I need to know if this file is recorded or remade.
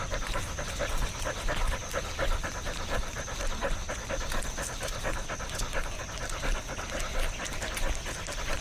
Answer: recorded